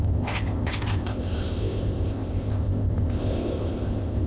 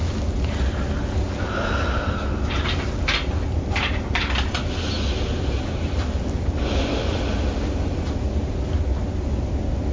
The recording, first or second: second